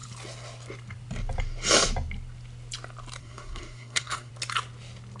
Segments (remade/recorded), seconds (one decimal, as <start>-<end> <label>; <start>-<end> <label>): 0.0-3.2 recorded; 3.2-4.3 remade; 4.3-5.2 recorded